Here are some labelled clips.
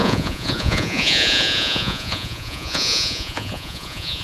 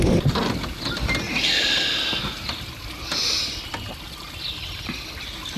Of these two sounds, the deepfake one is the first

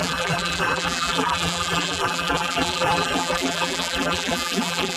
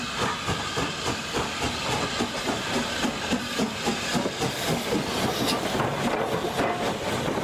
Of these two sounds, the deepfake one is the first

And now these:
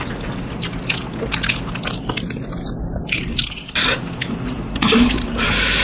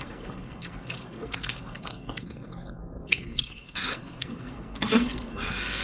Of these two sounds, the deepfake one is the second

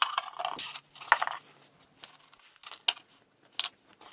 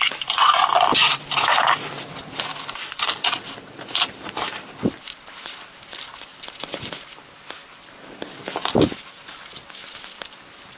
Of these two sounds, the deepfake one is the second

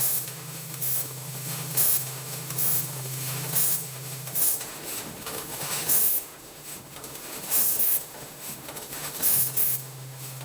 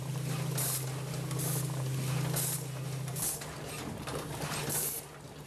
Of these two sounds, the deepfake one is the first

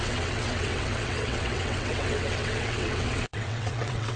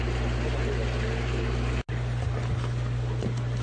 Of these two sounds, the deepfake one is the first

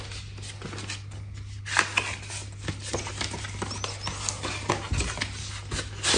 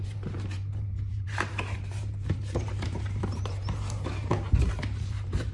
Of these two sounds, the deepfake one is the second